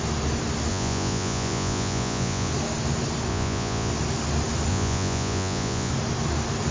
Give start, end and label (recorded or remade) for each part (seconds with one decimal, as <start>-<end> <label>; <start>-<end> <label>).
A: 0.0-0.7 recorded; 0.7-2.5 remade; 2.5-3.3 recorded; 3.3-3.9 remade; 3.9-4.7 recorded; 4.7-5.9 remade; 5.9-6.7 recorded